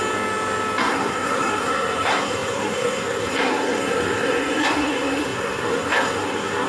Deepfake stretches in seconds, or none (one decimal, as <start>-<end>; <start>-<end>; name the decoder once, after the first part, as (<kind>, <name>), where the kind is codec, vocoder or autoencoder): 0.8-6.7 (codec, SNAC)